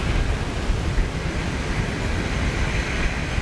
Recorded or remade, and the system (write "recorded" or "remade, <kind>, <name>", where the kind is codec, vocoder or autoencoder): recorded